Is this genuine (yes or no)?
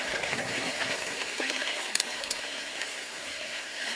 no